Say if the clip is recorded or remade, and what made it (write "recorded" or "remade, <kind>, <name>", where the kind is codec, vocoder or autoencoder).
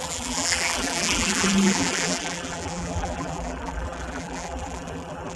remade, vocoder, BigVGAN v2